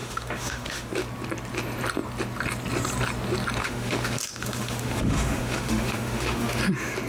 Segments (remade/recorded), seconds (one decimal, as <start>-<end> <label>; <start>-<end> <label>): 0.0-0.9 remade; 0.9-3.6 recorded; 3.6-6.6 remade; 6.6-7.1 recorded